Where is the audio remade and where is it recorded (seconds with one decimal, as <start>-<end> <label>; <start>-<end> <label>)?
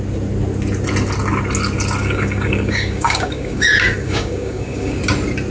0.0-2.0 recorded; 2.0-5.0 remade; 5.0-5.5 recorded